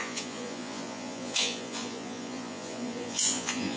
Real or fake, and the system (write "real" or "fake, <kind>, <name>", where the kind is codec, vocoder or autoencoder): fake, vocoder, Vocos